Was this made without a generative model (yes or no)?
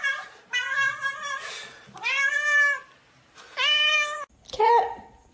no